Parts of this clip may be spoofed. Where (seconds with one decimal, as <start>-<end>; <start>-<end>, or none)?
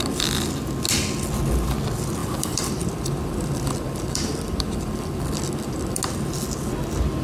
2.2-6.0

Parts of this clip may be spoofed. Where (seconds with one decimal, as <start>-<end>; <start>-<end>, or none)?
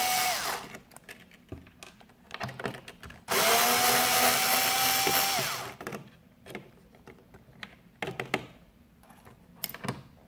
5.9-7.5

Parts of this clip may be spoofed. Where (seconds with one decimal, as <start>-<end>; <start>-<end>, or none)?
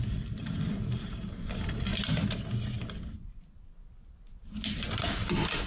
0.0-1.9; 5.3-5.7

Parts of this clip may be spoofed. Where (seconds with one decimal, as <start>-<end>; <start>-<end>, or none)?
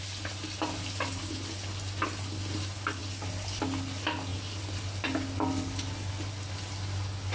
none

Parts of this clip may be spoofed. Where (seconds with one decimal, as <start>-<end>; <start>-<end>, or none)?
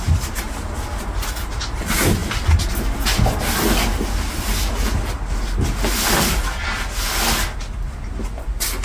none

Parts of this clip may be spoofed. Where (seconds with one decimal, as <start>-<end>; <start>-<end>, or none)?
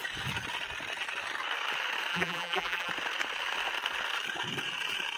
2.1-2.9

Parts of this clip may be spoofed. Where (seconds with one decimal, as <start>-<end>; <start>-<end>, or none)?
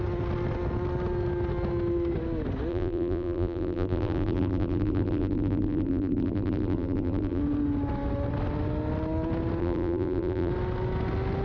2.7-7.4; 9.6-10.5